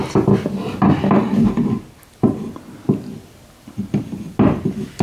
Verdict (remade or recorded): recorded